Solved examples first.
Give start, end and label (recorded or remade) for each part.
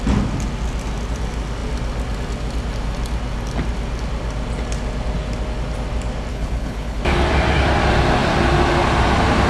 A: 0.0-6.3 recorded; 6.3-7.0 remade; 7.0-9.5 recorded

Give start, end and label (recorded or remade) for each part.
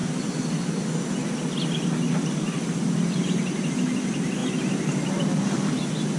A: 0.0-6.2 recorded